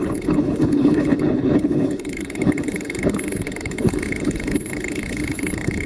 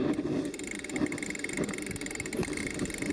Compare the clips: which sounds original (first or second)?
second